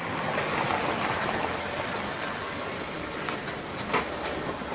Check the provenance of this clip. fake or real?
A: real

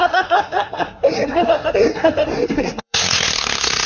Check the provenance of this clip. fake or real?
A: fake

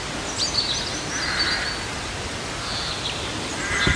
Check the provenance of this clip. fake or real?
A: real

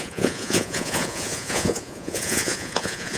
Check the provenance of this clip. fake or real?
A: fake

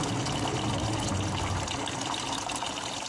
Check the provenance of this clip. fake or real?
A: real